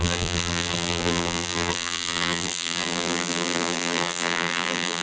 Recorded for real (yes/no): no